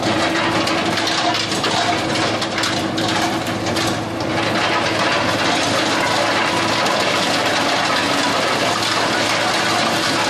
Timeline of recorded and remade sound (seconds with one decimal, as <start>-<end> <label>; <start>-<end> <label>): 0.0-10.3 recorded